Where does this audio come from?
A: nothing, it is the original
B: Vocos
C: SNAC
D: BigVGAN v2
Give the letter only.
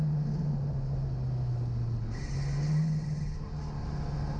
A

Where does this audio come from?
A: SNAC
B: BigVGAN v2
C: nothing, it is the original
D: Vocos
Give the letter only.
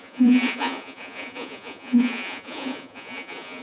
D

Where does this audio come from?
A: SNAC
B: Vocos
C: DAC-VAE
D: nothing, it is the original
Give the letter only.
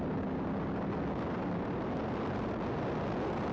D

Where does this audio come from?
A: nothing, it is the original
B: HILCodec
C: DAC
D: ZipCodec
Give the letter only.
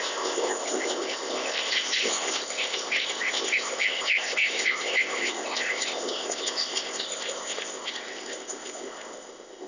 D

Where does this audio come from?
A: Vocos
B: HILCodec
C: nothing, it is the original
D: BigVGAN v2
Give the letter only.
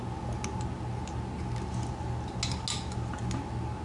C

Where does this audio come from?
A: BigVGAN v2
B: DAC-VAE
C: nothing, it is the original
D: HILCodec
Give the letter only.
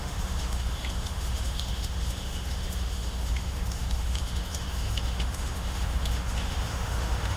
B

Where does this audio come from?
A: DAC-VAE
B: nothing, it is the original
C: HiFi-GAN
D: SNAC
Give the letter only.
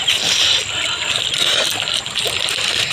B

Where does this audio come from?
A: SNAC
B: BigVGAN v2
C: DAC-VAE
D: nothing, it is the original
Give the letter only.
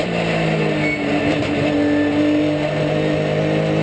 D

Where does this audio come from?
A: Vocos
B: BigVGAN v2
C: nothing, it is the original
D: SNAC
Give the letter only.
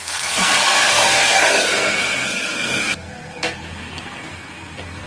D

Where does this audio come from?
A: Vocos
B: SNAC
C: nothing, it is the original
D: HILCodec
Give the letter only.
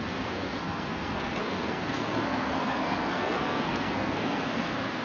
B